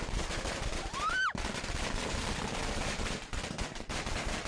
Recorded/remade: remade